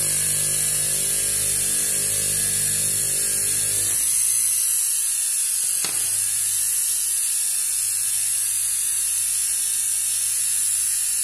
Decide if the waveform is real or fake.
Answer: real